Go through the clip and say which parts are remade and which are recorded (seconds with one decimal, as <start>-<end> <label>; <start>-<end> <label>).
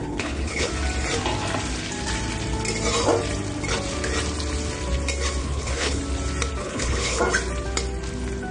0.0-0.7 remade; 0.7-5.4 recorded; 5.4-6.0 remade; 6.0-6.6 recorded; 6.6-7.2 remade; 7.2-8.5 recorded